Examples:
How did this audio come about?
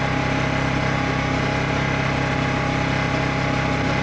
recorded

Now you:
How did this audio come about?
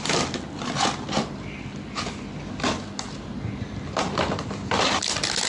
recorded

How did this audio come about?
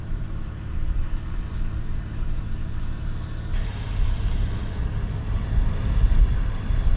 remade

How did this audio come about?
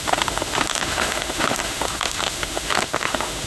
remade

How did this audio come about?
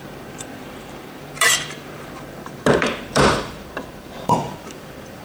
remade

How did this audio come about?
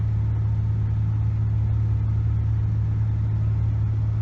recorded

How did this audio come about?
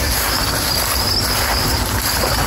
recorded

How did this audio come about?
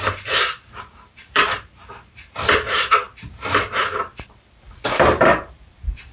remade